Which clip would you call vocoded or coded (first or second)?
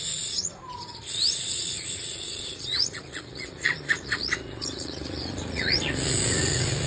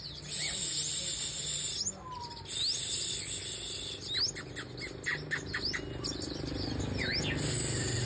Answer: first